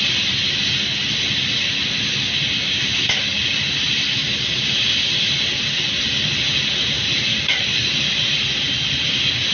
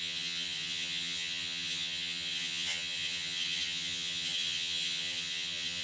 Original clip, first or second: first